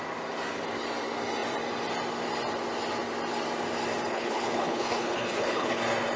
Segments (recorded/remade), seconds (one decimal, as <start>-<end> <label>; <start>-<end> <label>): 0.0-4.1 recorded; 4.1-5.8 remade; 5.8-6.2 recorded